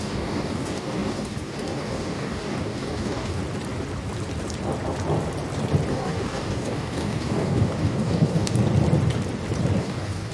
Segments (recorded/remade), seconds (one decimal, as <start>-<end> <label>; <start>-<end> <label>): 0.0-3.4 remade; 3.4-5.9 recorded; 5.9-8.6 remade; 8.6-9.8 recorded; 9.8-10.3 remade